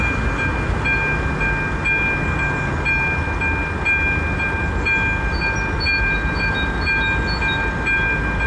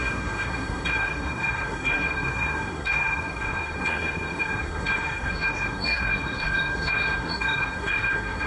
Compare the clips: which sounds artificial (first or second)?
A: second